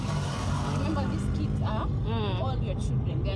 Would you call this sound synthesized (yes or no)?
no